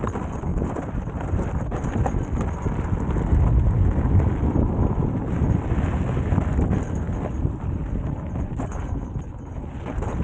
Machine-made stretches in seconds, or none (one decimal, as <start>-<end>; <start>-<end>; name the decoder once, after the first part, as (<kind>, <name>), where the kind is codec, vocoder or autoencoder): 0.5-1.5 (vocoder, BigVGAN v2)